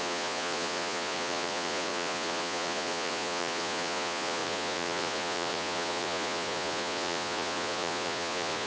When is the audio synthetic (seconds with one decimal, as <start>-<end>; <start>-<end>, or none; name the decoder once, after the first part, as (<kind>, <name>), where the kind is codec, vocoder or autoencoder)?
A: 0.0-8.7 (vocoder, Vocos)